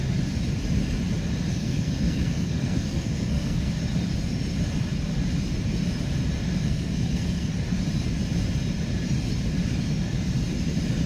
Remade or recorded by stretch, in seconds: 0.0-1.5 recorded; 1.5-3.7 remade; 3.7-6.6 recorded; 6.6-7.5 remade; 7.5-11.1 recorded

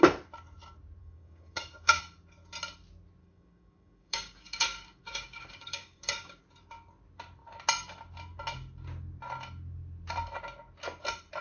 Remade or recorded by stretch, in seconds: 0.0-1.0 recorded; 1.0-2.0 remade; 2.0-3.2 recorded; 3.2-6.4 remade; 6.4-11.4 recorded

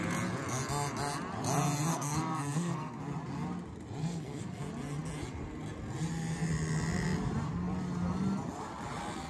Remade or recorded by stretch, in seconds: 0.0-1.9 recorded; 1.9-3.0 remade; 3.0-4.0 recorded; 4.0-4.6 remade; 4.6-9.3 recorded

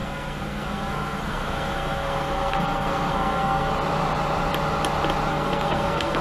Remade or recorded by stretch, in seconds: 0.0-3.7 remade; 3.7-5.3 recorded; 5.3-6.2 remade

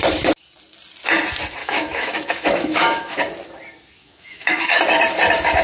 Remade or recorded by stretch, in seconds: 0.0-1.6 recorded; 1.6-3.2 remade; 3.2-4.0 recorded; 4.0-4.8 remade; 4.8-5.6 recorded

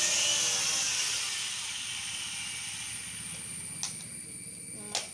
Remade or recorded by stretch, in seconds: 0.0-5.1 recorded

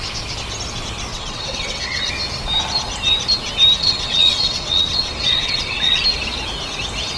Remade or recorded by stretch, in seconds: 0.0-1.1 recorded; 1.1-2.1 remade; 2.1-3.8 recorded; 3.8-6.0 remade; 6.0-7.2 recorded